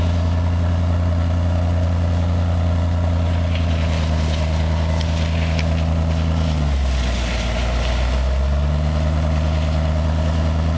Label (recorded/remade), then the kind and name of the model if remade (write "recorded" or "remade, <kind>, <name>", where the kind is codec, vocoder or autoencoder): recorded